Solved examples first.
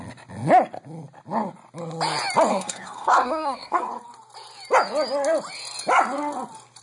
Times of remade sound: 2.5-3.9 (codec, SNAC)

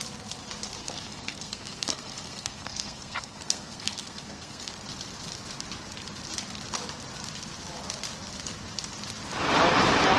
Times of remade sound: 0.8-4.7 (codec, SNAC)

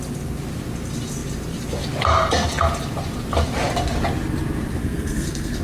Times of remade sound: 4.8-5.6 (codec, SNAC)

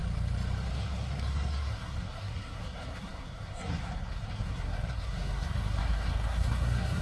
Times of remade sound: 0.7-7.0 (codec, SNAC)